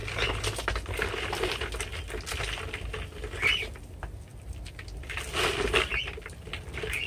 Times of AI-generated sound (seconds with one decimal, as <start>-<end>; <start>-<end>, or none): none